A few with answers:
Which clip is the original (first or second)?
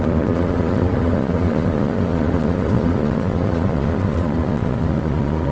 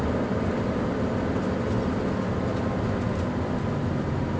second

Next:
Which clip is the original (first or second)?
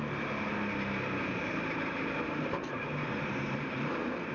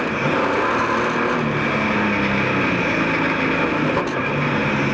second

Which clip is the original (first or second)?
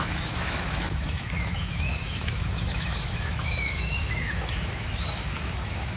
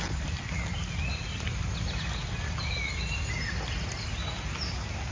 second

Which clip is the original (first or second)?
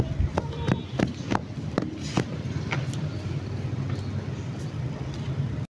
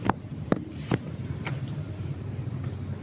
first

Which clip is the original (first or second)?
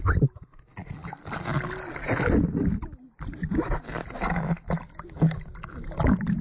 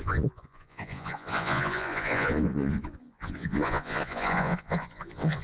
first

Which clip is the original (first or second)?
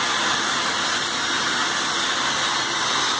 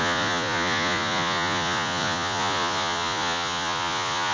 first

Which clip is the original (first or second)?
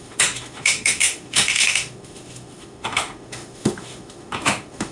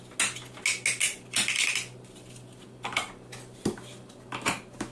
second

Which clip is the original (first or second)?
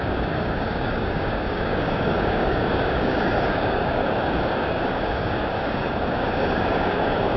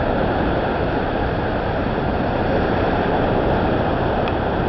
second